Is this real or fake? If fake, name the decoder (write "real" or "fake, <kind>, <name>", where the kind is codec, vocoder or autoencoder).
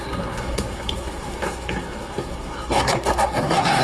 fake, codec, SNAC